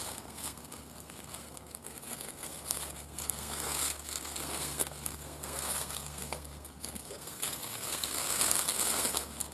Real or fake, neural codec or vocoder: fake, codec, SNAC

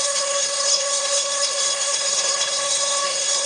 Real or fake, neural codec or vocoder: fake, codec, SNAC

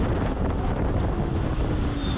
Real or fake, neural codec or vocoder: real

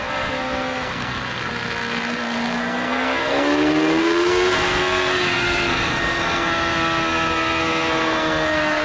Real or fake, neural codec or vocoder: fake, codec, SNAC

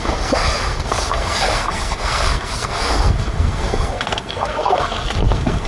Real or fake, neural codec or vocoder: fake, codec, SNAC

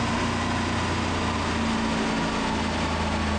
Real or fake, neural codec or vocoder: real